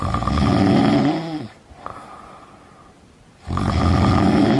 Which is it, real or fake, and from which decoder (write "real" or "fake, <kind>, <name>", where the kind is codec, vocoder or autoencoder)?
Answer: real